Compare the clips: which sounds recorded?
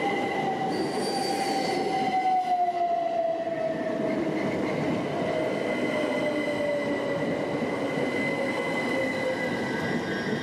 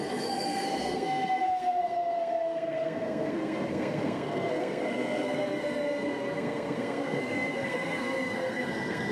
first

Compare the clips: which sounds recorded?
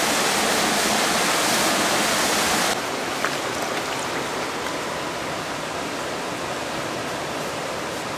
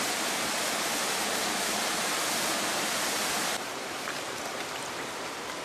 first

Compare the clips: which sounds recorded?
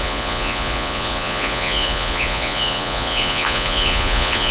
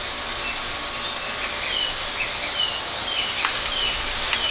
second